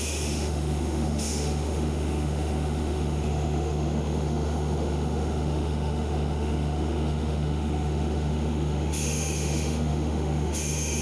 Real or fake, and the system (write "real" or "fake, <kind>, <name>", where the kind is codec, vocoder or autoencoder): fake, autoencoder, DAC-VAE